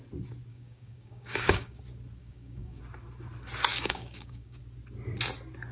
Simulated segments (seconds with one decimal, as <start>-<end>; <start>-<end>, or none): 0.5-1.8; 2.2-2.8; 3.7-4.6